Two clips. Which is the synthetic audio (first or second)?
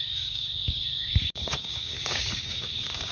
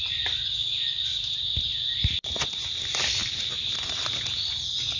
first